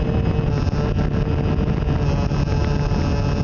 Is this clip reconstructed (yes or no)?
no